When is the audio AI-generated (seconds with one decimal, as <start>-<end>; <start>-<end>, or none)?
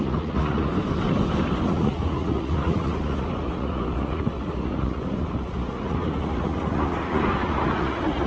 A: 0.0-0.7; 1.6-8.3